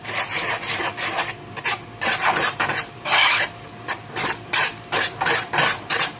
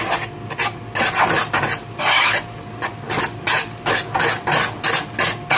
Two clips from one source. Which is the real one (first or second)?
second